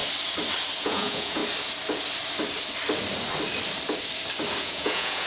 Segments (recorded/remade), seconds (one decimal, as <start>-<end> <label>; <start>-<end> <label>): 0.0-0.8 recorded; 0.8-1.4 remade; 1.4-4.6 recorded; 4.6-5.3 remade